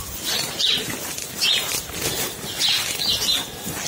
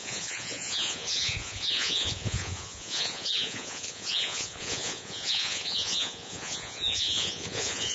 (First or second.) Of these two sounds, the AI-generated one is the second